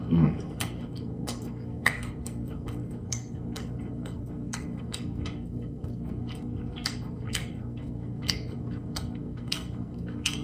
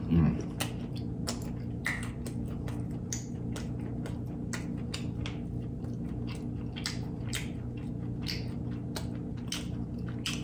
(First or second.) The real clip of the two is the second